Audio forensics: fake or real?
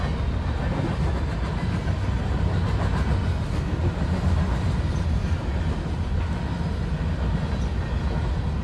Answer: real